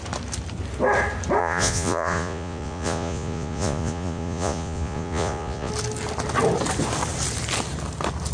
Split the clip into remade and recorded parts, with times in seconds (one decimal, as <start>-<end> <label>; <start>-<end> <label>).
0.0-1.4 recorded; 1.4-5.7 remade; 5.7-8.3 recorded